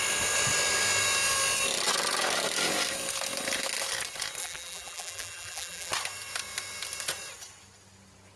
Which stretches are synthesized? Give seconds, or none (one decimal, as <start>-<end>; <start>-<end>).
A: 4.4-5.9